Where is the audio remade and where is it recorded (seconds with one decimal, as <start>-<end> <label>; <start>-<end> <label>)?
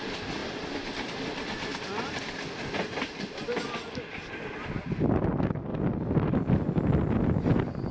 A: 0.0-7.9 recorded